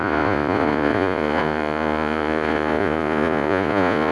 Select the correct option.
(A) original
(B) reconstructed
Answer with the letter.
B